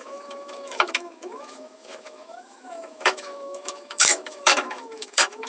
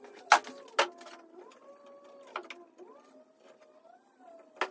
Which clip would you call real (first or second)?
second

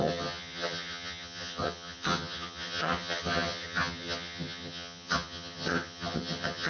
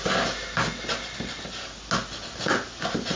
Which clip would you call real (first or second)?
second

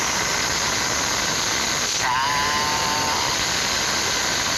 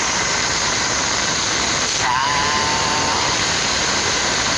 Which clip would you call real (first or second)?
first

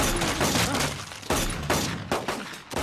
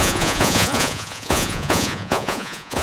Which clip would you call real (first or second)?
first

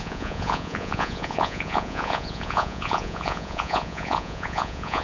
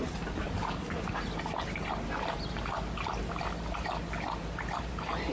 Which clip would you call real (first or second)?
second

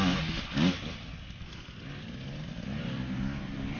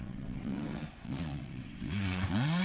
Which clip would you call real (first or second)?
first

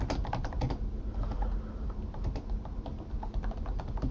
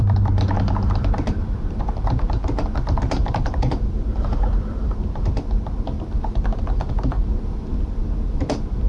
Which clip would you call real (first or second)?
first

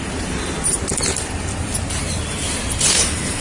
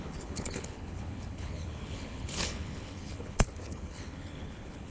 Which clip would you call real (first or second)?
first